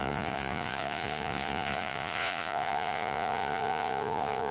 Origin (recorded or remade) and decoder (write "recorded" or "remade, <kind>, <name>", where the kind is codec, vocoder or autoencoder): remade, vocoder, Vocos